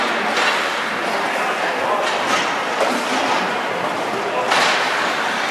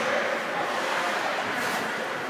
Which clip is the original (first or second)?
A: first